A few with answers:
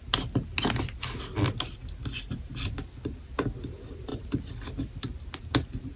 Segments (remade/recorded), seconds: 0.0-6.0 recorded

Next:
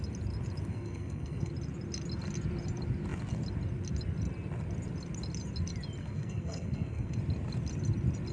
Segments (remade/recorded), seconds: 0.0-0.7 recorded; 0.7-1.5 remade; 1.5-6.0 recorded; 6.0-7.2 remade; 7.2-8.3 recorded

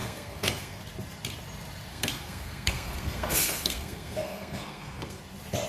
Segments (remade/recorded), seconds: 0.0-0.8 remade; 0.8-1.9 recorded; 1.9-5.2 remade; 5.2-5.7 recorded